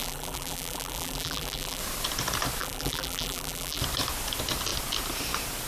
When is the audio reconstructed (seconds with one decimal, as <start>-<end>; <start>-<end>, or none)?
0.0-1.8; 2.6-3.8